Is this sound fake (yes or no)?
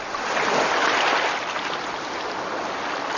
no